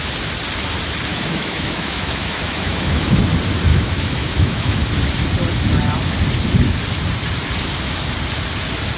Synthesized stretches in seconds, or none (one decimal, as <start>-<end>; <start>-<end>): 1.1-3.2; 3.7-4.9